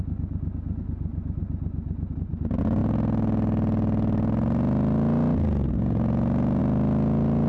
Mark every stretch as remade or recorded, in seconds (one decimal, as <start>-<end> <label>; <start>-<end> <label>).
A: 0.0-7.5 recorded